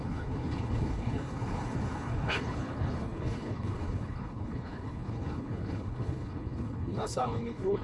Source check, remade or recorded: remade